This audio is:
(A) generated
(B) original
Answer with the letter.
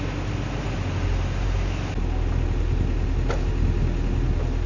B